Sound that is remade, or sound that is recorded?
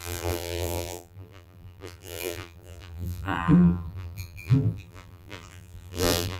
remade